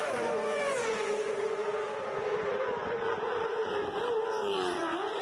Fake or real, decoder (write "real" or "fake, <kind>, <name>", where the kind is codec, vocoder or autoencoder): fake, vocoder, Vocos